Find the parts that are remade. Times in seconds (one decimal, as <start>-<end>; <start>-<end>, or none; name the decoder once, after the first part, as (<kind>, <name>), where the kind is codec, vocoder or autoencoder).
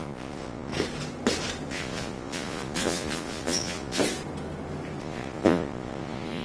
0.0-0.7 (vocoder, Vocos); 1.7-4.0; 5.0-6.4